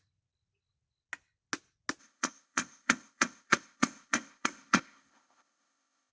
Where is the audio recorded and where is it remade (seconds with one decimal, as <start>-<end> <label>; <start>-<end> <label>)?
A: 0.0-2.0 recorded; 2.0-6.1 remade